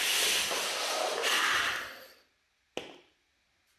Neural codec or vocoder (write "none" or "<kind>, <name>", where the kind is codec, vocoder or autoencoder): none